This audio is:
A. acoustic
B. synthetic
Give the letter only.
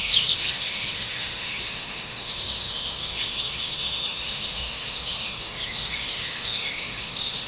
B